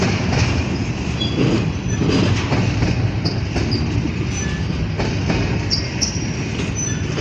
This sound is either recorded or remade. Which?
recorded